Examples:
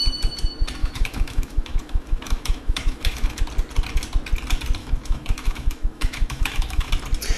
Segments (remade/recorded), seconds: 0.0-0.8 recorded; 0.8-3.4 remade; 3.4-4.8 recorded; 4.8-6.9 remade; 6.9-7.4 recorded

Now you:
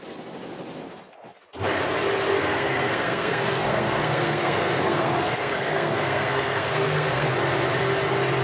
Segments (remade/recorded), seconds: 0.0-2.4 recorded; 2.4-7.3 remade; 7.3-8.4 recorded

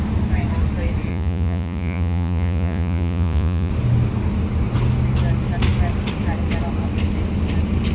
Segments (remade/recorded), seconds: 0.0-1.1 recorded; 1.1-3.7 remade; 3.7-7.9 recorded

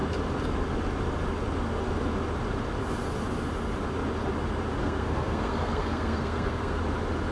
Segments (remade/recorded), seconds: 0.0-4.8 recorded; 4.8-6.8 remade; 6.8-7.3 recorded

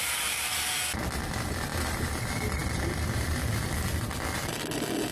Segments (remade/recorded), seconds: 0.0-1.7 recorded; 1.7-2.2 remade; 2.2-5.1 recorded

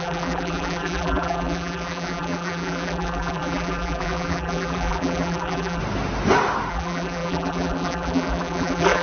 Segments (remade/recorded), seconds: 0.0-5.8 remade; 5.8-6.7 recorded; 6.7-9.0 remade